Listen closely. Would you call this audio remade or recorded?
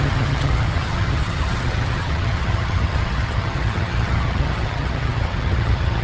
remade